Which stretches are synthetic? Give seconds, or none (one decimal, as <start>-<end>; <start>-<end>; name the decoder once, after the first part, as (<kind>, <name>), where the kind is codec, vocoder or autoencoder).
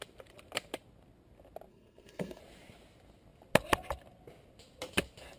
1.7-2.4 (codec, SNAC)